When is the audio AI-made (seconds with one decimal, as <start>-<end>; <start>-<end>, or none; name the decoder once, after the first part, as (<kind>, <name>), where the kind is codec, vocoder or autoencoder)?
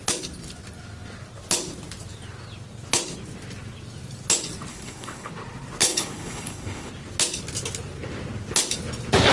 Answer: 4.7-5.3 (codec, HILCodec); 5.8-6.9